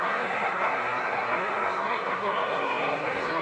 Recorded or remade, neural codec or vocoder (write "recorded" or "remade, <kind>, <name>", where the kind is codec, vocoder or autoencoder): remade, codec, SNAC